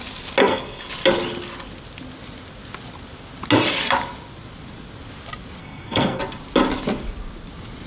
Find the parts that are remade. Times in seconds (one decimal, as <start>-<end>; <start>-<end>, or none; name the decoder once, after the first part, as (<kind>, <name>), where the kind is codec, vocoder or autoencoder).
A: 0.4-0.9 (codec, SNAC); 5.6-6.2